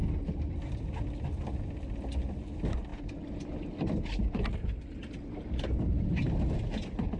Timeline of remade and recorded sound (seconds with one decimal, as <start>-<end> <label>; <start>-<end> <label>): 0.0-7.2 recorded